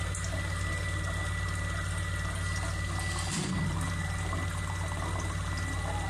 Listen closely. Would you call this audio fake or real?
real